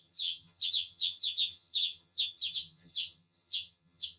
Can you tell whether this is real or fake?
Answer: fake